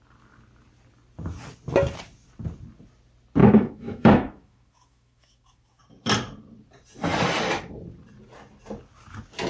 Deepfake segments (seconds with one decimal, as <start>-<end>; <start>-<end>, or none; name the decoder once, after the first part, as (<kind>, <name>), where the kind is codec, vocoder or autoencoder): 3.4-5.8 (autoencoder, DAC-VAE)